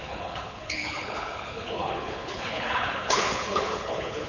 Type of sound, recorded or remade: remade